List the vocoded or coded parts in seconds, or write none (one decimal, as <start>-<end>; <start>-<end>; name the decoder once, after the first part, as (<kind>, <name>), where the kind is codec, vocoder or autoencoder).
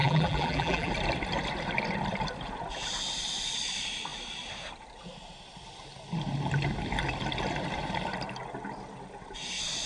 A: 0.0-0.9 (vocoder, BigVGAN v2)